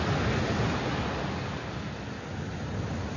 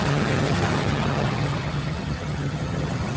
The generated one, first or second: second